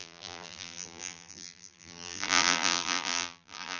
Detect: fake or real fake